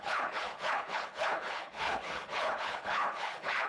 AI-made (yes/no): yes